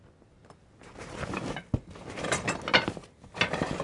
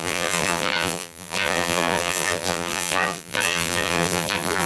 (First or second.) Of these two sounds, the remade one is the second